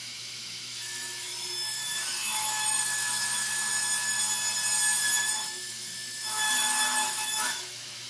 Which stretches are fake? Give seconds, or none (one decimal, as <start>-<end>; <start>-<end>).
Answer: 0.0-4.2; 5.2-8.1